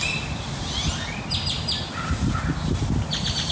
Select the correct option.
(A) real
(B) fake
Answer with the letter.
A